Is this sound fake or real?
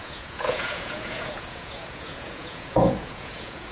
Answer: fake